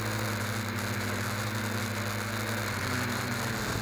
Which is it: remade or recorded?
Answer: recorded